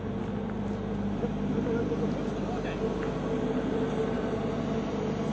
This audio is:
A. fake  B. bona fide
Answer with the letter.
B